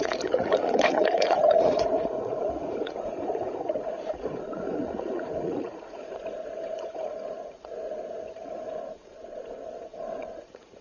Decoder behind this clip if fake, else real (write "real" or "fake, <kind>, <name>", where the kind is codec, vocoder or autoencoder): fake, vocoder, Vocos